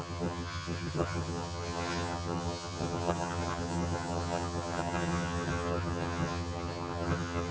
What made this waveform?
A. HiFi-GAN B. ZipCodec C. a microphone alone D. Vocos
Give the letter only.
A